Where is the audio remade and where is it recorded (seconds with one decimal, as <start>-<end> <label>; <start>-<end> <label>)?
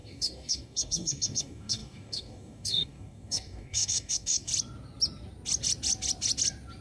0.0-4.5 remade; 4.5-6.8 recorded